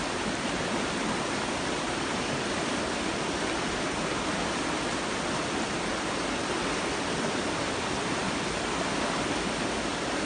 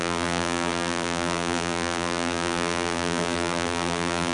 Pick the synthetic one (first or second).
second